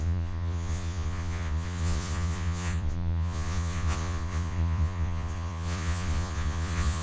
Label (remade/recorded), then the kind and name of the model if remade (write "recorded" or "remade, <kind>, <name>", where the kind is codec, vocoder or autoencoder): remade, vocoder, Vocos